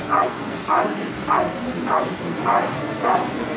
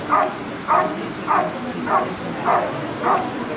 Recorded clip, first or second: second